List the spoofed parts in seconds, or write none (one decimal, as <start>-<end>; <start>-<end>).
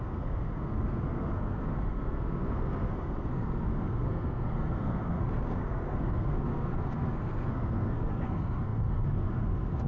0.0-9.9